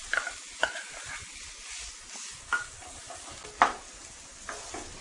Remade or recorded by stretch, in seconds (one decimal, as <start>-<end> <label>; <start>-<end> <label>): 0.0-5.0 recorded